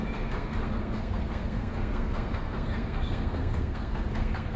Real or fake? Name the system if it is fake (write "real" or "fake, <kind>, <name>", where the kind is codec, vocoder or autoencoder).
fake, codec, SNAC